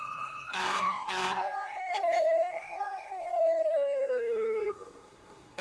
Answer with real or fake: fake